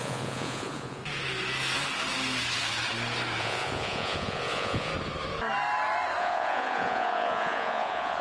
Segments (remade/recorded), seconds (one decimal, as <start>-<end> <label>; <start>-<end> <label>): 0.0-1.0 remade; 1.0-3.4 recorded; 3.4-4.9 remade; 4.9-6.2 recorded; 6.2-8.2 remade